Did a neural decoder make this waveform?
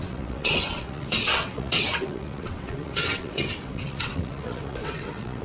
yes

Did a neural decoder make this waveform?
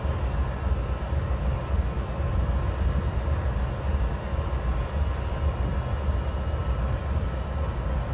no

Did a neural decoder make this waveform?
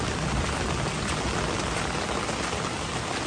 no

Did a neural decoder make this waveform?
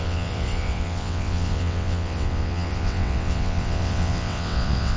yes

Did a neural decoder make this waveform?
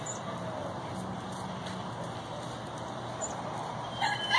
no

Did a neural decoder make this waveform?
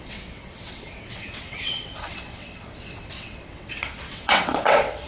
yes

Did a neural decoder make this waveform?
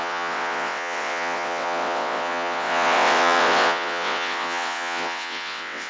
yes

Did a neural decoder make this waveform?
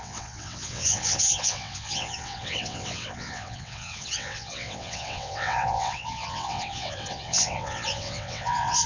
yes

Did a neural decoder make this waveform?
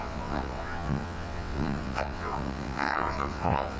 yes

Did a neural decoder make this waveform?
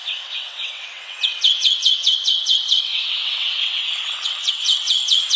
yes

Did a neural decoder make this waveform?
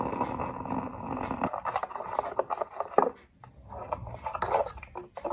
no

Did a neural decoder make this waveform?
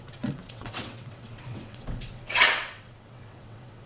yes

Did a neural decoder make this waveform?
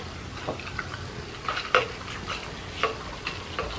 no